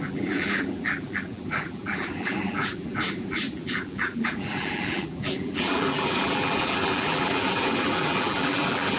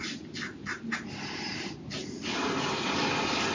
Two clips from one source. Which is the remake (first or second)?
first